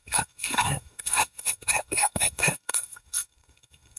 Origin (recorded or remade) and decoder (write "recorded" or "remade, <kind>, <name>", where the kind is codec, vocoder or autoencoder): remade, codec, SNAC